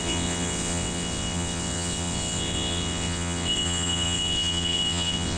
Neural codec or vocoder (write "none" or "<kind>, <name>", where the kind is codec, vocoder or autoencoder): vocoder, WaveNeXt